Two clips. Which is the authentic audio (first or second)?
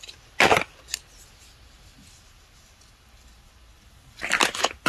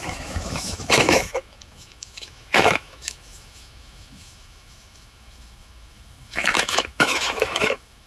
first